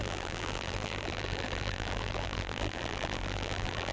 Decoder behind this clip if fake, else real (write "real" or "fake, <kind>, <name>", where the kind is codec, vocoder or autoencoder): fake, vocoder, BigVGAN v2